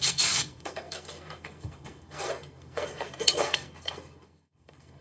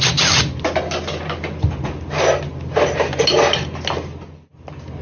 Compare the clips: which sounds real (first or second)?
second